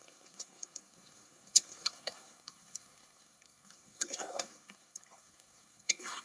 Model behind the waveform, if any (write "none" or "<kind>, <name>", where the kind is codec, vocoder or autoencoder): codec, SNAC